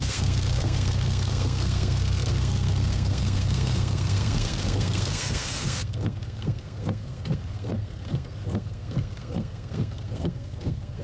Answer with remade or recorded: remade